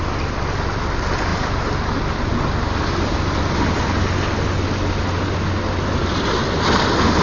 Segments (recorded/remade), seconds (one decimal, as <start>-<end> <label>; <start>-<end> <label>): 0.0-7.2 recorded